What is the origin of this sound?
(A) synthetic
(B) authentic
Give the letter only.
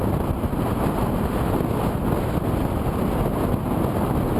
B